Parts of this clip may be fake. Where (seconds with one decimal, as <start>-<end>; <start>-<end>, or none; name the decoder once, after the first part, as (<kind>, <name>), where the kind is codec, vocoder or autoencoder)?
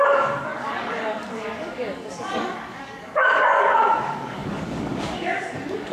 0.0-5.9 (codec, DAC)